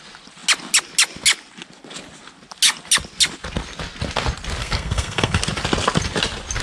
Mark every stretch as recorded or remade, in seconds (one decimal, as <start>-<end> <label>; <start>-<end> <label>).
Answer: 0.0-4.6 recorded; 4.6-5.4 remade; 5.4-6.6 recorded